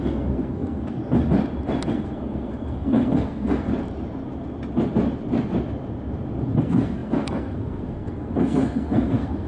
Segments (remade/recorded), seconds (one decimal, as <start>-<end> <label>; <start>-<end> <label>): 0.0-1.0 remade; 1.0-1.9 recorded; 1.9-3.7 remade; 3.7-6.6 recorded; 6.6-9.5 remade